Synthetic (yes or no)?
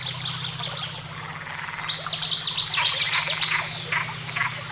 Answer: no